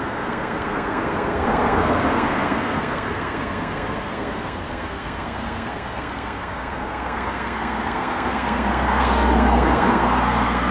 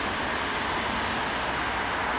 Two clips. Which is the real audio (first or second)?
second